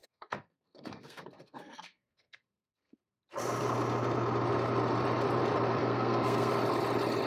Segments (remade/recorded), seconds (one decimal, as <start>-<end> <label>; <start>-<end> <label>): 0.0-3.0 remade; 3.0-5.8 recorded; 5.8-6.5 remade; 6.5-7.3 recorded

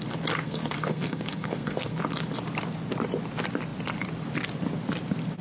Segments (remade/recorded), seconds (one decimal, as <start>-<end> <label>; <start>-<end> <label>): 0.0-0.4 recorded; 0.4-2.0 remade; 2.0-5.4 recorded

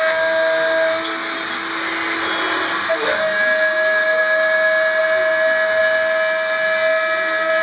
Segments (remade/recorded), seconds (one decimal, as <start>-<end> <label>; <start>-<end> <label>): 0.0-7.6 recorded

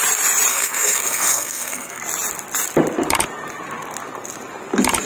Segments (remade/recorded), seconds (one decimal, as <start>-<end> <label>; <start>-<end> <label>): 0.0-0.5 recorded; 0.5-2.0 remade; 2.0-5.1 recorded

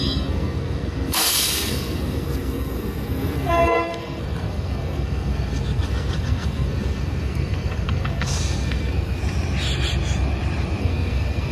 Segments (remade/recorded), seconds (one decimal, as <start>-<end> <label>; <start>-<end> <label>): 0.0-9.2 remade; 9.2-10.8 recorded; 10.8-11.5 remade

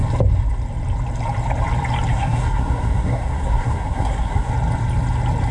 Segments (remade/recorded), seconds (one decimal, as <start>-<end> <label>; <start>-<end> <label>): 0.0-2.1 recorded; 2.1-4.5 remade; 4.5-5.5 recorded